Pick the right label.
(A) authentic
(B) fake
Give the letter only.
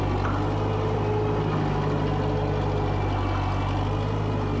A